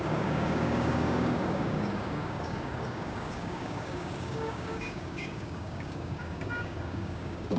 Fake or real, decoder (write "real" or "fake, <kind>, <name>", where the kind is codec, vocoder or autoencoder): fake, codec, DAC